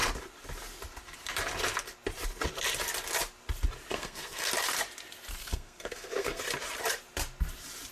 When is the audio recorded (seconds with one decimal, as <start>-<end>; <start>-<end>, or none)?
0.0-3.9; 4.5-5.4; 6.4-7.9